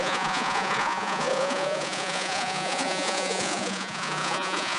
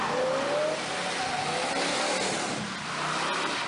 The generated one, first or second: first